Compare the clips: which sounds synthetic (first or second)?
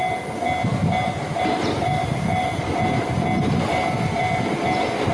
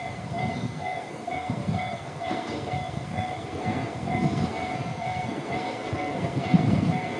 second